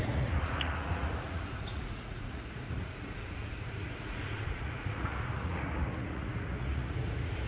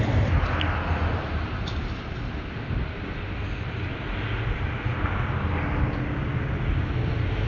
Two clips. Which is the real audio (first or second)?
second